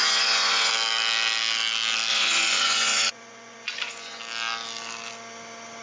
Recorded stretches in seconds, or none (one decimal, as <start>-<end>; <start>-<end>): 0.7-2.1; 4.2-5.8